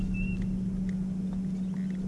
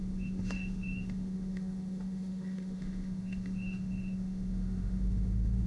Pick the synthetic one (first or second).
second